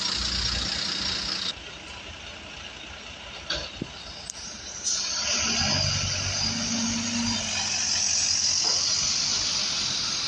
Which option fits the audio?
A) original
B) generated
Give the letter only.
A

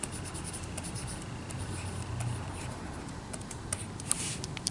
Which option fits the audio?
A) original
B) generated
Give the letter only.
B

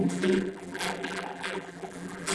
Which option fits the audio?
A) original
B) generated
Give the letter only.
B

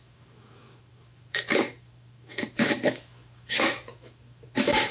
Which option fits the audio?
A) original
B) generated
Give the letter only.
B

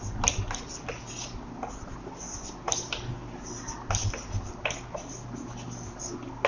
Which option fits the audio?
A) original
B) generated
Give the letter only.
A